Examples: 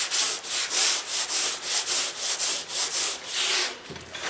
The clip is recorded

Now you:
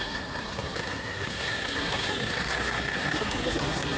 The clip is remade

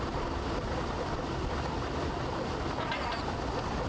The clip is recorded